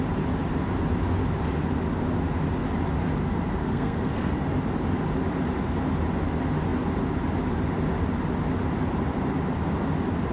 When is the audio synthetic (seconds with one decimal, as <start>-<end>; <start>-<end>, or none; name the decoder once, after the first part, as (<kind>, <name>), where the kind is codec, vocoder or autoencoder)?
3.6-4.3 (codec, SNAC)

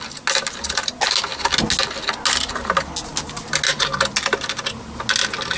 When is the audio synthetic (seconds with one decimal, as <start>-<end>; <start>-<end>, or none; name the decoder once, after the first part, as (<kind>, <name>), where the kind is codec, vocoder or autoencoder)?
none

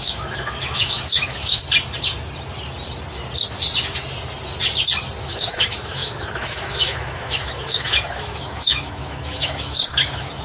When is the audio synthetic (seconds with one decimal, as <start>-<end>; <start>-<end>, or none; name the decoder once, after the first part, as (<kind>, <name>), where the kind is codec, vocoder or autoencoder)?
0.0-1.6 (autoencoder, DAC-VAE); 5.2-10.4

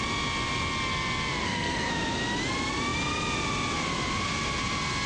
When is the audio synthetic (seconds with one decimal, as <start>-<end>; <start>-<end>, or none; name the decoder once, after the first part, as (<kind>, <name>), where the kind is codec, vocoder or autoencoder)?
1.4-1.9 (codec, SNAC)

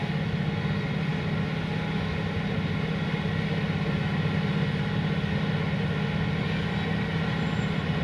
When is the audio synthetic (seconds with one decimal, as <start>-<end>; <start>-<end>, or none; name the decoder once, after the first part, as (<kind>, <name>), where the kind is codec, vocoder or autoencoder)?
none

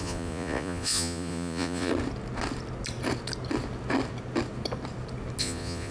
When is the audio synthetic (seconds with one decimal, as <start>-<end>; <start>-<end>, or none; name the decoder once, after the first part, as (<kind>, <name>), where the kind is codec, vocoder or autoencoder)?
0.0-1.9 (vocoder, Vocos); 5.4-5.9